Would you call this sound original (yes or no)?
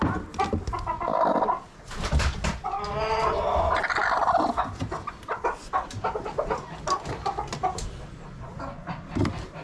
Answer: yes